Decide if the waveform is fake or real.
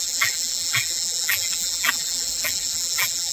fake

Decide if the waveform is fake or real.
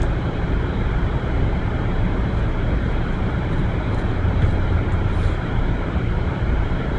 fake